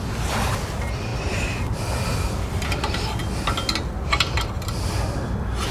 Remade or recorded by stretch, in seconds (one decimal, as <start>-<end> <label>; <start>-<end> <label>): 0.0-5.7 recorded